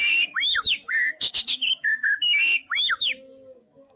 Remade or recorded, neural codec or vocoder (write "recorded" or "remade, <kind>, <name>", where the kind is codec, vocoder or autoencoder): remade, codec, DAC